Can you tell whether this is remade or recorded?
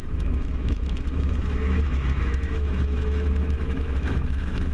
remade